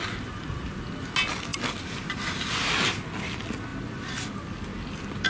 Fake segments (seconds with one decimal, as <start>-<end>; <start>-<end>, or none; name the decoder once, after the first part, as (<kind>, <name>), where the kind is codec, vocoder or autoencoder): none